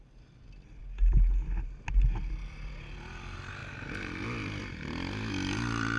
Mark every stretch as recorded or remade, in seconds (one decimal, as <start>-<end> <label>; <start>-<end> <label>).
0.0-6.0 recorded

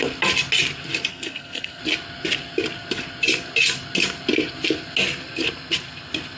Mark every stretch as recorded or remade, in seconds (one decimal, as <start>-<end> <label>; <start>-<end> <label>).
0.0-1.1 recorded; 1.1-1.8 remade; 1.8-6.4 recorded

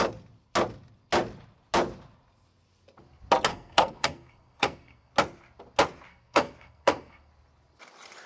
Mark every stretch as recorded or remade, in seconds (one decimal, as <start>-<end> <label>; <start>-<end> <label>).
0.0-3.5 recorded; 3.5-5.1 remade; 5.1-6.1 recorded; 6.1-7.3 remade; 7.3-8.3 recorded

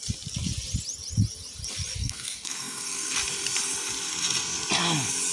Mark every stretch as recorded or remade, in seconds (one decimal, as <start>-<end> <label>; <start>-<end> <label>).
0.0-2.0 recorded; 2.0-3.2 remade; 3.2-5.3 recorded

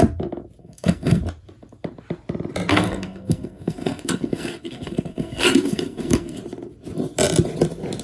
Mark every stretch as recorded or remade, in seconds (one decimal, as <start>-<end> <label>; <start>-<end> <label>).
0.0-0.6 recorded; 0.6-1.2 remade; 1.2-2.7 recorded; 2.7-6.4 remade; 6.4-8.0 recorded